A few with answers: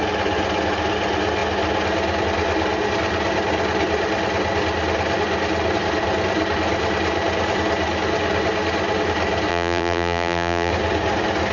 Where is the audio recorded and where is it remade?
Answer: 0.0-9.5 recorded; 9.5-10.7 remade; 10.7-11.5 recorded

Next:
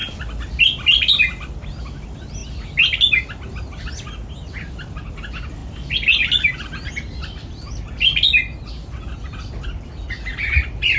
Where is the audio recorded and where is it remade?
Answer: 0.0-1.8 remade; 1.8-11.0 recorded

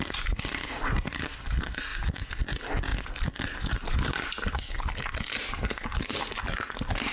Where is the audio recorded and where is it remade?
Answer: 0.0-7.1 recorded

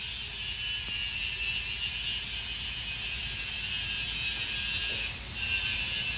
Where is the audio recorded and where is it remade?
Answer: 0.0-6.2 remade